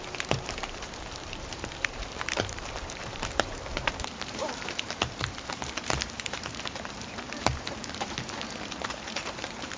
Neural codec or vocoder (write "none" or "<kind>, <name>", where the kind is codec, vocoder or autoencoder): vocoder, BigVGAN v2